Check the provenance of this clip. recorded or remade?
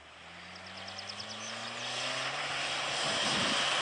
recorded